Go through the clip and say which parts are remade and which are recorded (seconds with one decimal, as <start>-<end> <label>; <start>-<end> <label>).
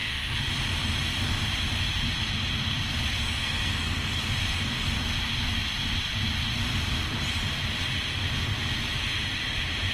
0.0-0.5 remade; 0.5-3.3 recorded; 3.3-4.2 remade; 4.2-9.9 recorded